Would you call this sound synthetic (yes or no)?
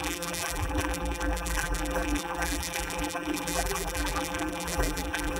yes